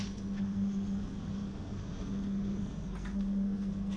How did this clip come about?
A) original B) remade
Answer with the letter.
B